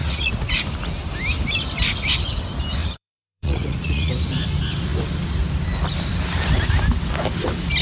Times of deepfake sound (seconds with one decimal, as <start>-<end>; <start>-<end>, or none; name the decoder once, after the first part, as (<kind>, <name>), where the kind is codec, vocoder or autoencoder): 0.0-0.6 (vocoder, Vocos); 2.8-4.1